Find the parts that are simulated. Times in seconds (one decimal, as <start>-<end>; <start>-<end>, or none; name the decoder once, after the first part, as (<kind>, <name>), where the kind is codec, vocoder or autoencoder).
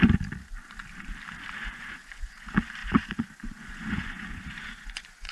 1.7-5.3 (vocoder, Vocos)